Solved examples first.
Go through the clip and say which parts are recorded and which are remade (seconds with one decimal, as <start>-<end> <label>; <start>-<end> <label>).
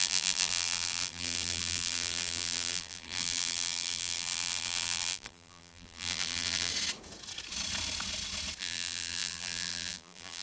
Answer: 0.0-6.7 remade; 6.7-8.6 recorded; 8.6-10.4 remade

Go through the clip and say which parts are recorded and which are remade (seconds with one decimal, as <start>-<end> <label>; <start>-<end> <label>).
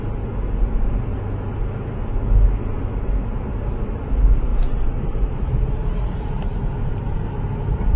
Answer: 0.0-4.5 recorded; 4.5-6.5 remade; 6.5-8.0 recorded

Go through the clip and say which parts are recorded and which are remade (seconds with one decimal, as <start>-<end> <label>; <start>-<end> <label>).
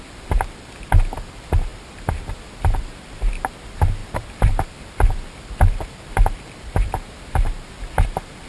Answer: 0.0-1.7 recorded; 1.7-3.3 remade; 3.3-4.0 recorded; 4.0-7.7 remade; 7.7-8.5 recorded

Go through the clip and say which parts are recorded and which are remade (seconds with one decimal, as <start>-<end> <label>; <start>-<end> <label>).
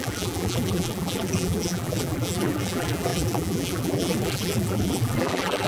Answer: 0.0-5.7 remade